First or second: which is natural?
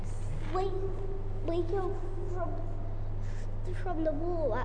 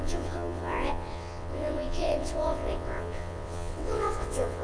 first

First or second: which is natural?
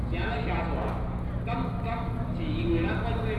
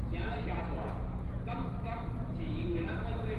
first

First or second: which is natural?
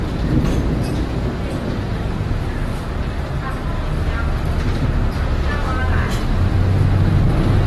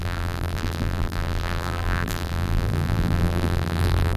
first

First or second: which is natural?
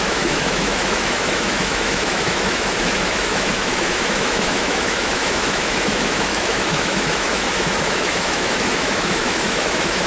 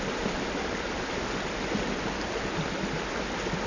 second